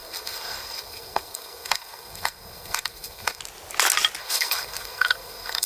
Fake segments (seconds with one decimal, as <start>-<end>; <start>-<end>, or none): 0.0-3.4; 4.2-5.7